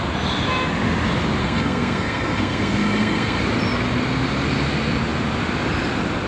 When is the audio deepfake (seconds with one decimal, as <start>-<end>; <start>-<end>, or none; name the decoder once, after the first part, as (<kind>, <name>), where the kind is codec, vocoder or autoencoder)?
1.4-3.4 (codec, SNAC)